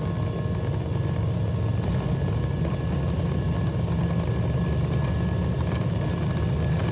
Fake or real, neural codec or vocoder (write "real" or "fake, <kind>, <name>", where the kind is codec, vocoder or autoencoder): real